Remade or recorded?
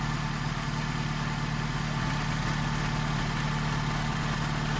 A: recorded